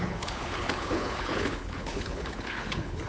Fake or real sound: fake